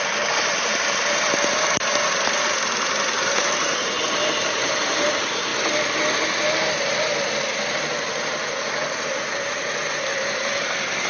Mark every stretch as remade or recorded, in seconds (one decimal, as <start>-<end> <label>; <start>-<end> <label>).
0.0-5.5 remade; 5.5-6.9 recorded; 6.9-10.1 remade; 10.1-11.1 recorded